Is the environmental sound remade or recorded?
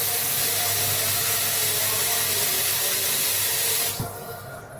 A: recorded